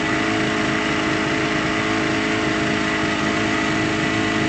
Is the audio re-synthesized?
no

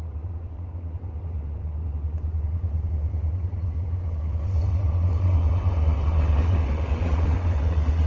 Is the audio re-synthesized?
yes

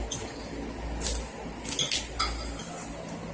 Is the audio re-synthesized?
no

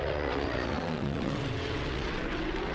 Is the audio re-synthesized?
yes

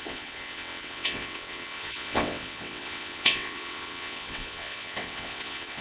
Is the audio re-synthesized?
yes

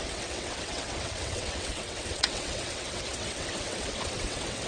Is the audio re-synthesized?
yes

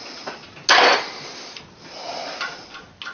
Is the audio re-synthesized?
no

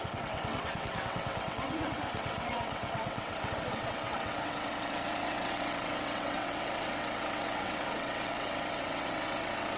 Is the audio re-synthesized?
yes